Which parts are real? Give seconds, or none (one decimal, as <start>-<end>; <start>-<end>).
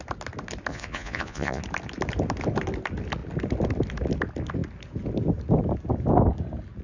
0.0-0.7; 1.6-6.8